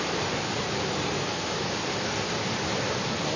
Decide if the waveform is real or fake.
real